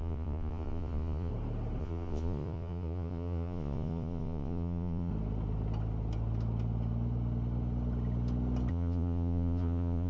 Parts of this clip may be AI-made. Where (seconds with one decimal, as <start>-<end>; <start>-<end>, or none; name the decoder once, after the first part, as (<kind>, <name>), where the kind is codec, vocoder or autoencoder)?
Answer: 0.0-1.3 (vocoder, Vocos); 1.8-5.1; 8.7-10.1